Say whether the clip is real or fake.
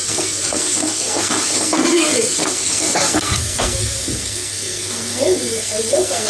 fake